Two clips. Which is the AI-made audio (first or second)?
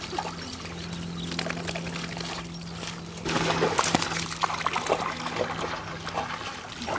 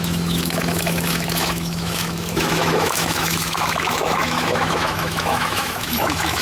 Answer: second